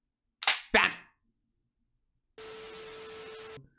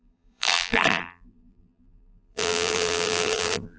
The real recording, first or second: first